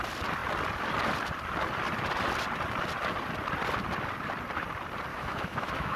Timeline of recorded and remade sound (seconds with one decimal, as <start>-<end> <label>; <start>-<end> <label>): 0.0-5.1 recorded; 5.1-6.0 remade